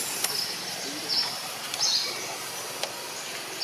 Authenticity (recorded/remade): recorded